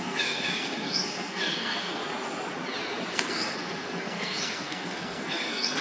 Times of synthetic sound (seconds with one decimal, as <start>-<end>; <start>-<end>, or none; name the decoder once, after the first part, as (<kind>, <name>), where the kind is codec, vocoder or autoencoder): 0.0-2.0 (codec, SNAC); 3.1-5.8